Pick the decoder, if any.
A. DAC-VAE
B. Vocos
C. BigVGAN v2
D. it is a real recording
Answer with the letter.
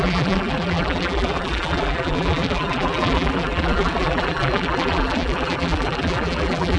C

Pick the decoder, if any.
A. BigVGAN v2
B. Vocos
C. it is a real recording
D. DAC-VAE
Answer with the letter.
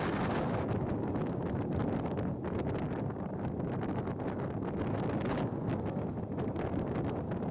A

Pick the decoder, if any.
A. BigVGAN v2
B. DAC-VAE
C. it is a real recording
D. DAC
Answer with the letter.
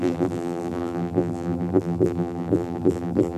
A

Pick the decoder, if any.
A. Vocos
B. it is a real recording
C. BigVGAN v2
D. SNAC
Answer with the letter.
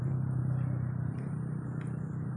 B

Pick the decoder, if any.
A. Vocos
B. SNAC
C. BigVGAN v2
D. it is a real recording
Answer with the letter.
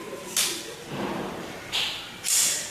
C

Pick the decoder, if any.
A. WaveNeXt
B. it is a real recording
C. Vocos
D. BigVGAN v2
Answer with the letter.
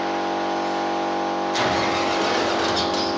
B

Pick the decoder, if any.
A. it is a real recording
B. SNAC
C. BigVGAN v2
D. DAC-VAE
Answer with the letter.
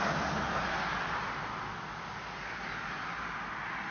A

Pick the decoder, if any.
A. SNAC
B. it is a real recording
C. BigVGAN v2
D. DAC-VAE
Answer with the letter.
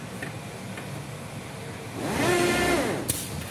C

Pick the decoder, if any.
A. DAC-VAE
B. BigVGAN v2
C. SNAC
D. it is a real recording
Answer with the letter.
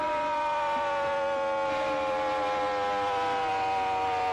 D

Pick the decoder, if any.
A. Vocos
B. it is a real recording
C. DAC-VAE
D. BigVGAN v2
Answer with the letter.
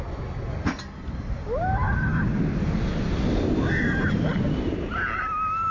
B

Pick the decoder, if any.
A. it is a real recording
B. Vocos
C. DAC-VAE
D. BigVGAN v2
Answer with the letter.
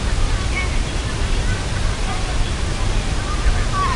A